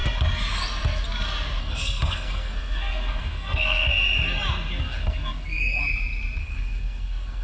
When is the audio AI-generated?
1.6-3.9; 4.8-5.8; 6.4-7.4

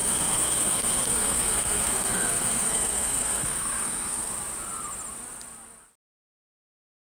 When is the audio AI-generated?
0.0-4.3

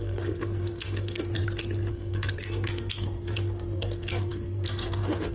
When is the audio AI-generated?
0.0-1.3; 1.9-5.3

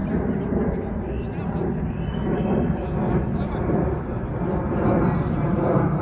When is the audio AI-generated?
none

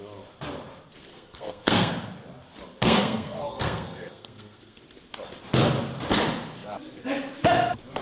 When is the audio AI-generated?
1.1-1.9; 2.7-4.8

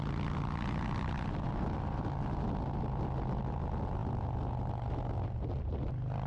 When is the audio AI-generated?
none